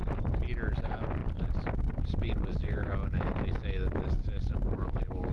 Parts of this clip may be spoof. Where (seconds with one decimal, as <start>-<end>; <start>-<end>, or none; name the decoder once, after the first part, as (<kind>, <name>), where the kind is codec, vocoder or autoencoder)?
none